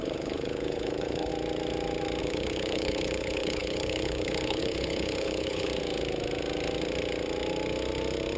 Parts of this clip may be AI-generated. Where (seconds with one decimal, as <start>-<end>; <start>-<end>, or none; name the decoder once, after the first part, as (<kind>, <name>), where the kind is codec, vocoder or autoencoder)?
0.0-1.3 (codec, HILCodec); 2.2-5.7